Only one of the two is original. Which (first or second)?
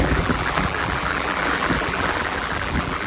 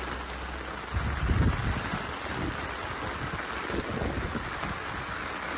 second